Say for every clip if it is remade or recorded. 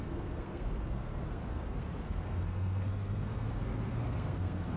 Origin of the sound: remade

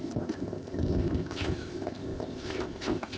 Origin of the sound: remade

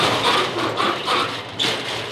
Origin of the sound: recorded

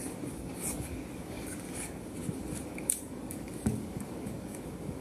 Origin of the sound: remade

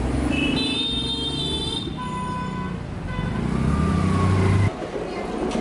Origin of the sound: recorded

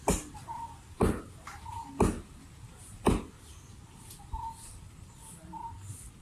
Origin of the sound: recorded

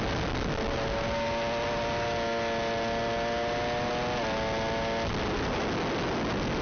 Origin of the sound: recorded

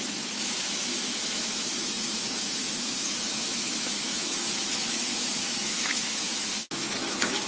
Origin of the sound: remade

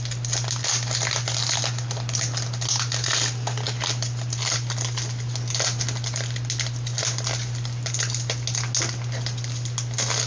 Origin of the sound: recorded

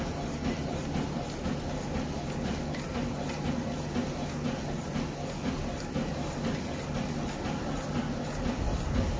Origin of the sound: recorded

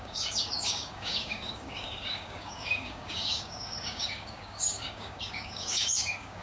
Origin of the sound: remade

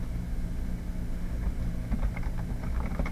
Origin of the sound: recorded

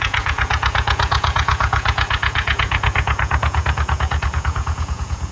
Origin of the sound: remade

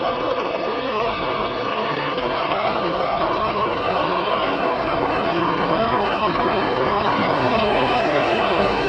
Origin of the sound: remade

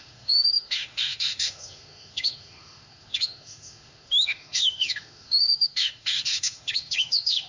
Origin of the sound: remade